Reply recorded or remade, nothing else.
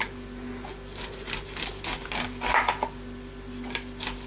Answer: recorded